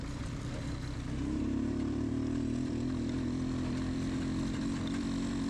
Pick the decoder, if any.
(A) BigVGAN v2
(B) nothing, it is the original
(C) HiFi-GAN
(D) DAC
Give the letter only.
A